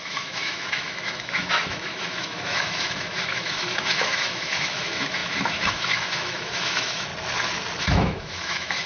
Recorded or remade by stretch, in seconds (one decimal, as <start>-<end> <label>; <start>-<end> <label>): 0.0-7.1 remade; 7.1-7.8 recorded; 7.8-8.9 remade